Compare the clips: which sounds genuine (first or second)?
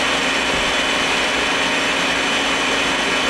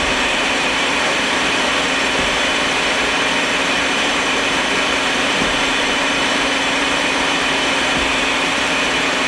first